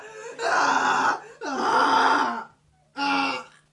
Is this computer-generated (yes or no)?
no